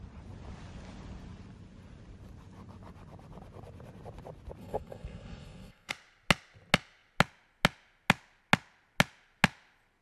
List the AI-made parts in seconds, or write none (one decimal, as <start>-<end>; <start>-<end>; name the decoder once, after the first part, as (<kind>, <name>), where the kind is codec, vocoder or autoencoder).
4.6-5.9 (codec, SNAC)